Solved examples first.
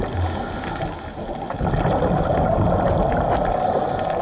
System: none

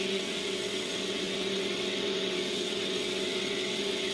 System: vocoder, WaveNeXt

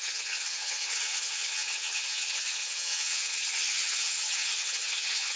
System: vocoder, HiFi-GAN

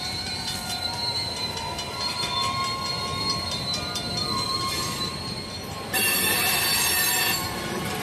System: vocoder, BigVGAN v2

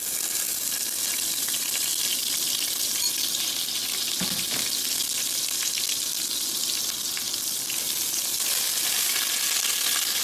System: none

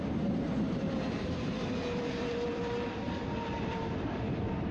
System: vocoder, BigVGAN v2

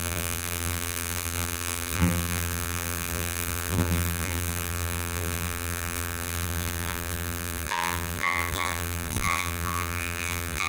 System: vocoder, BigVGAN v2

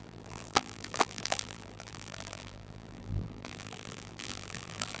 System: vocoder, BigVGAN v2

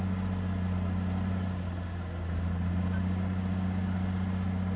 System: none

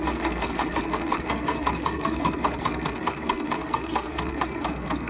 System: codec, SNAC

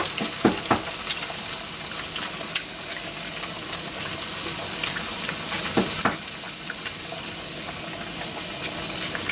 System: none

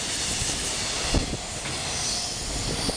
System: none